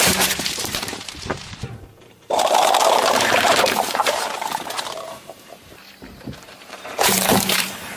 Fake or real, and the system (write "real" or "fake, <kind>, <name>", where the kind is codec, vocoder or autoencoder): fake, vocoder, BigVGAN v2